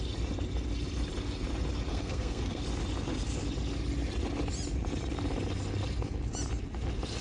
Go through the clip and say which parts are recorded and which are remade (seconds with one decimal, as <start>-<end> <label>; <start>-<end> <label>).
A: 0.0-1.9 recorded; 1.9-2.6 remade; 2.6-7.2 recorded